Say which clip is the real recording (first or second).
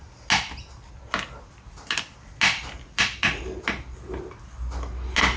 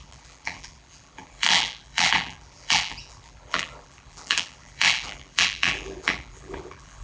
first